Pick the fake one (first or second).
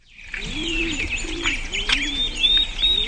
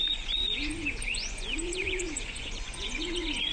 second